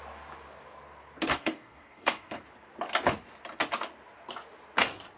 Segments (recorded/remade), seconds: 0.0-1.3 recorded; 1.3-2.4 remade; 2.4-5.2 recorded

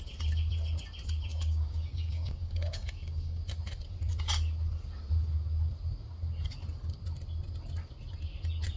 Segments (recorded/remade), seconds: 0.0-1.3 recorded; 1.3-3.4 remade; 3.4-8.8 recorded

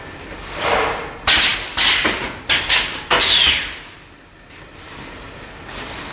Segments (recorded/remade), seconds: 0.0-6.1 recorded

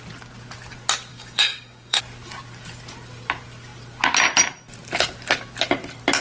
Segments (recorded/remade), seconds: 0.0-1.1 recorded; 1.1-2.0 remade; 2.0-6.2 recorded

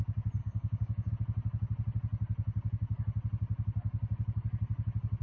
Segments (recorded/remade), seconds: 0.0-0.4 recorded; 0.4-1.1 remade; 1.1-5.2 recorded

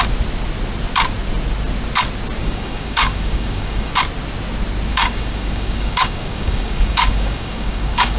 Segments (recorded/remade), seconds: 0.0-2.4 recorded; 2.4-3.9 remade; 3.9-4.9 recorded; 4.9-8.2 remade

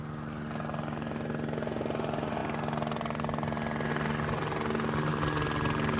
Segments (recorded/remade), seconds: 0.0-6.0 recorded

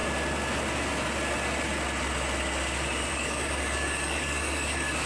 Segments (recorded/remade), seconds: 0.0-3.1 recorded; 3.1-5.1 remade